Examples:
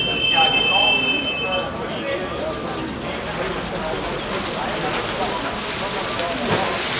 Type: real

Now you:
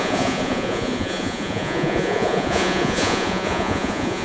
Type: fake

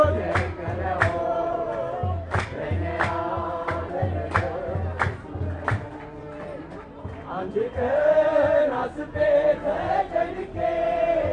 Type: real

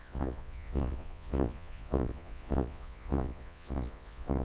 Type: fake